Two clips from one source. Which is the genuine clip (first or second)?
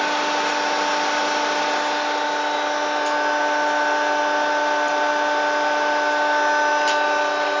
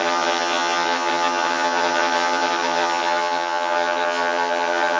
first